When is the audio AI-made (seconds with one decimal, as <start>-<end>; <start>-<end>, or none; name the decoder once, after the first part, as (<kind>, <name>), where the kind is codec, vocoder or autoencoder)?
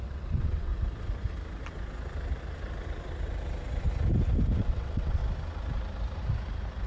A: 0.0-0.7 (vocoder, WaveNeXt); 4.6-5.2